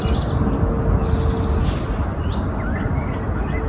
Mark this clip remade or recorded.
recorded